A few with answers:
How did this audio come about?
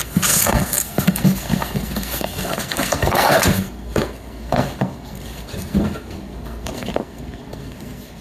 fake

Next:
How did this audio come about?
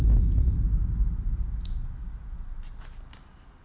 real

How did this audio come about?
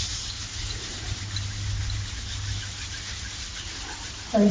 real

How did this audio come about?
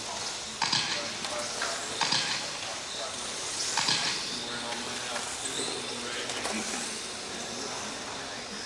real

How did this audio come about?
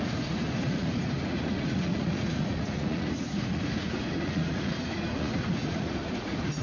fake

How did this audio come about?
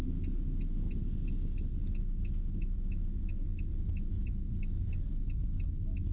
real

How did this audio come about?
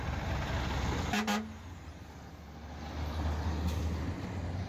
real